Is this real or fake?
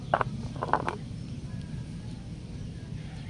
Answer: real